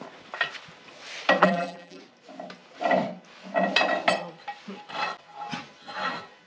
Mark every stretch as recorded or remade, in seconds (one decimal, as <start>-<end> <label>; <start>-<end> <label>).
0.0-1.4 recorded; 1.4-2.0 remade; 2.0-6.5 recorded